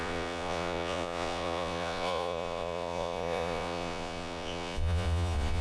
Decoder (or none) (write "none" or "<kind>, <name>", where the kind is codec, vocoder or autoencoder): vocoder, Vocos